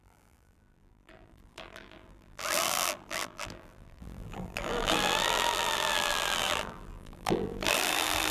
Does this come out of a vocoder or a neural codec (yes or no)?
yes